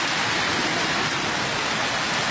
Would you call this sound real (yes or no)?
yes